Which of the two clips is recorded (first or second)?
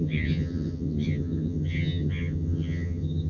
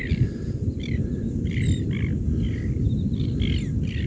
second